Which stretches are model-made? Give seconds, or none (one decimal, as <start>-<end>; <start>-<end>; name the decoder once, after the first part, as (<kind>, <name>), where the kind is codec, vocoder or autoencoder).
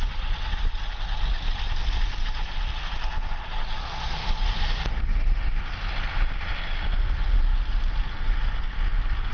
none